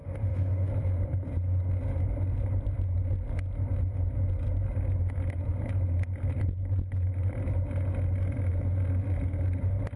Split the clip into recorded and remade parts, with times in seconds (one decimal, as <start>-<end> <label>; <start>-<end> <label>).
0.0-0.7 remade; 0.7-10.0 recorded